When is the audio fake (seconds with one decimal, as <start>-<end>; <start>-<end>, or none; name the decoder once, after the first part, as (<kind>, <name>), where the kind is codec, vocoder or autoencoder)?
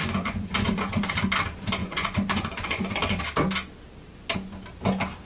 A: 0.0-1.1 (vocoder, Vocos); 1.8-3.2